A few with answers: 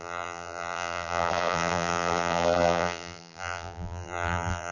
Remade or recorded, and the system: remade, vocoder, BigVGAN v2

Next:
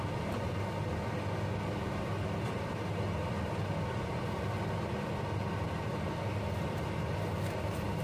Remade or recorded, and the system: recorded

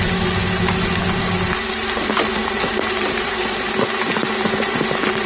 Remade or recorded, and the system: remade, vocoder, BigVGAN v2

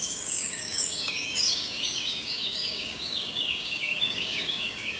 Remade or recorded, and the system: remade, codec, DAC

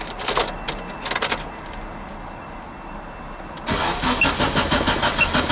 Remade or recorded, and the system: recorded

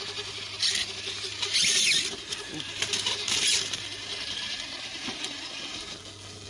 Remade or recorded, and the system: recorded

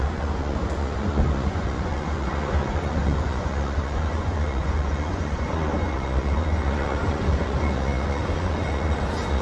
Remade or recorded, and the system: remade, vocoder, Vocos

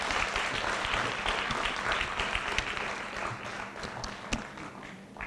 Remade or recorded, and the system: recorded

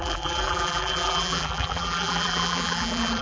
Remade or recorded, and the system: remade, vocoder, BigVGAN v2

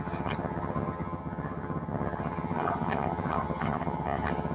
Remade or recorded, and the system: remade, vocoder, HiFi-GAN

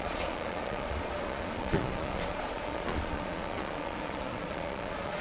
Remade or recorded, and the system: remade, vocoder, Vocos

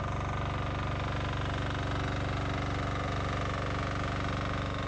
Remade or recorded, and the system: recorded